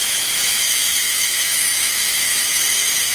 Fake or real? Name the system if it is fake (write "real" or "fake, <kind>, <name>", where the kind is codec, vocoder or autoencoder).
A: fake, autoencoder, DAC-VAE